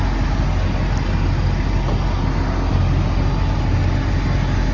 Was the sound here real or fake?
real